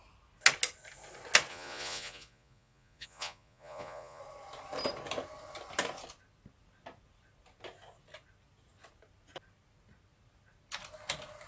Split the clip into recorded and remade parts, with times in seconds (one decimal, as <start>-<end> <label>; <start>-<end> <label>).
0.0-1.5 recorded; 1.5-4.2 remade; 4.2-11.5 recorded